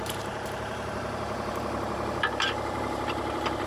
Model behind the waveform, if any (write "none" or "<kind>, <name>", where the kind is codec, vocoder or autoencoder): vocoder, BigVGAN v2